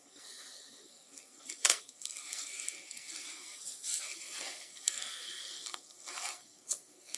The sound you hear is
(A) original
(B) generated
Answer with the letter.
B